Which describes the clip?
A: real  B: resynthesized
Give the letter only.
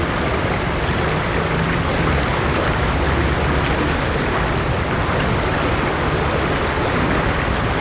A